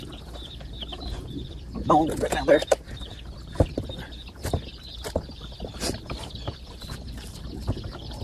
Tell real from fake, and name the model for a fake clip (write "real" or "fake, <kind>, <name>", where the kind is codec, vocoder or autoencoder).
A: fake, vocoder, BigVGAN v2